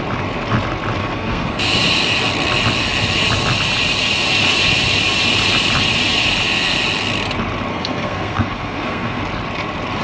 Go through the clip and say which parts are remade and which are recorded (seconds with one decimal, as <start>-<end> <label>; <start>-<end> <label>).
0.0-1.0 recorded; 1.0-1.6 remade; 1.6-7.7 recorded; 7.7-9.2 remade; 9.2-10.0 recorded